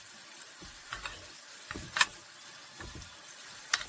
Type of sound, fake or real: real